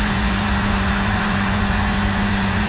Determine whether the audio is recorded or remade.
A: remade